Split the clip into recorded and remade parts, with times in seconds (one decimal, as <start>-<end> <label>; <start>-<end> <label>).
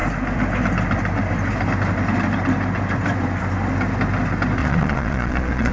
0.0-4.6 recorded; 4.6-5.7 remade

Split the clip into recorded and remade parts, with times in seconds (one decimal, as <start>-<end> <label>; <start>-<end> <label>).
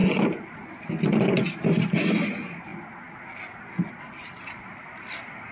0.0-5.5 recorded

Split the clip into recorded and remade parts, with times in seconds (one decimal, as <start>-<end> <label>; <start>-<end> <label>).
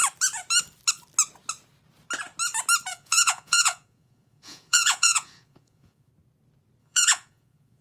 0.0-2.9 recorded; 2.9-6.1 remade; 6.1-6.8 recorded; 6.8-7.8 remade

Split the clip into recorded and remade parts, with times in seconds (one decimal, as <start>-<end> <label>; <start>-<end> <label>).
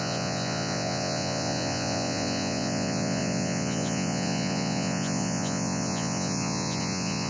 0.0-7.3 remade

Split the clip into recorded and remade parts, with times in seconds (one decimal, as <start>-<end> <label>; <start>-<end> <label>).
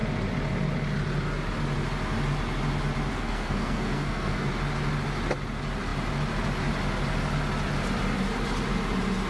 0.0-3.1 recorded; 3.1-4.5 remade; 4.5-9.3 recorded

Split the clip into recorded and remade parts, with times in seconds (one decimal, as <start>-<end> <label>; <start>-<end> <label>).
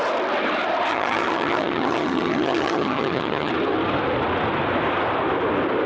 0.0-0.9 recorded; 0.9-3.5 remade; 3.5-5.9 recorded